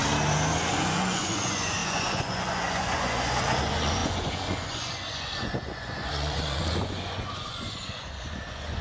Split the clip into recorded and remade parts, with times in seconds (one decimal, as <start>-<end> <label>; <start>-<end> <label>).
0.0-0.7 recorded; 0.7-8.8 remade